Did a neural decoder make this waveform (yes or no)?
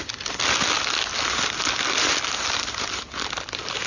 no